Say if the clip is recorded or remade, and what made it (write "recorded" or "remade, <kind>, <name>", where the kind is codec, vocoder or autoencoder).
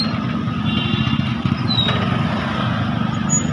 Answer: recorded